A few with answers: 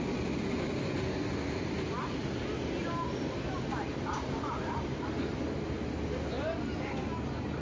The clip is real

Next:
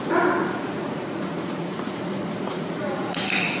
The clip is fake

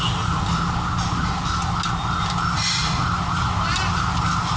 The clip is real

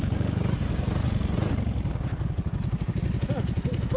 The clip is real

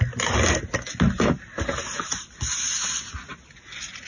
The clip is real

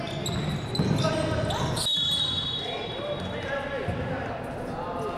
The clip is real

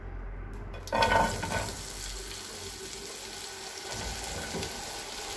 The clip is real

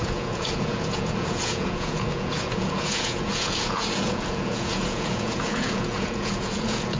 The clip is fake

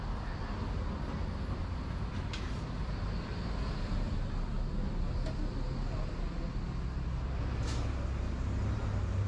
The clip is real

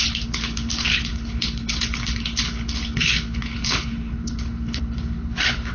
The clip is fake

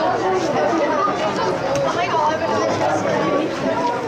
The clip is real